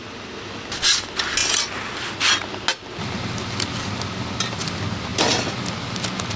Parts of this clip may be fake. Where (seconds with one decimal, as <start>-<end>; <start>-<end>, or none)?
none